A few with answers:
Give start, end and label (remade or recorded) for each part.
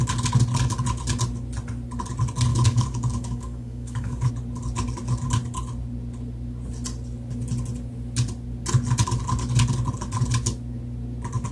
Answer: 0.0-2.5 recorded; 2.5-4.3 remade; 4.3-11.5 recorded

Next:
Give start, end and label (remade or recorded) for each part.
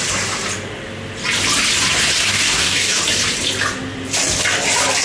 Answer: 0.0-2.3 recorded; 2.3-3.0 remade; 3.0-5.0 recorded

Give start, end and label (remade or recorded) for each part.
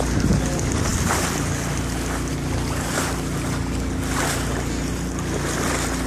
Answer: 0.0-6.1 recorded